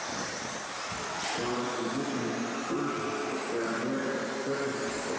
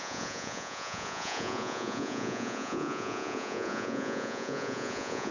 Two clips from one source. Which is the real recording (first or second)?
first